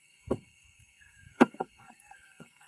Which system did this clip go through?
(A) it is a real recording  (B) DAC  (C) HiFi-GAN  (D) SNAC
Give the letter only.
D